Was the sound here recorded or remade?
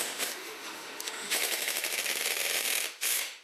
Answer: remade